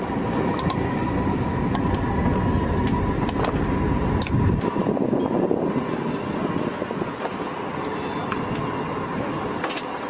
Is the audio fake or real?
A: real